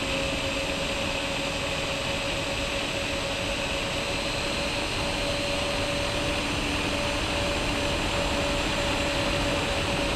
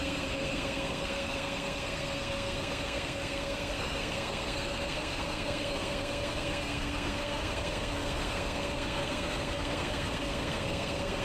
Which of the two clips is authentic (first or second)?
first